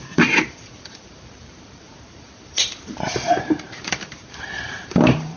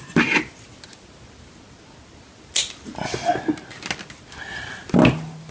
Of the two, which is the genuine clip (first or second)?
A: second